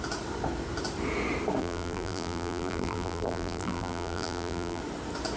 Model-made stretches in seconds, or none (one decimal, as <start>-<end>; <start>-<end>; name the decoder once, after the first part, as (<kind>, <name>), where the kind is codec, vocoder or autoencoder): 1.6-4.8 (vocoder, BigVGAN v2)